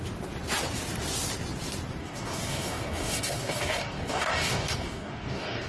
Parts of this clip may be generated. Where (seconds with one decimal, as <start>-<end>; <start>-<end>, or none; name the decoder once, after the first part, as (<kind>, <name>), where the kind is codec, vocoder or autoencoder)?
2.0-5.7 (codec, DAC)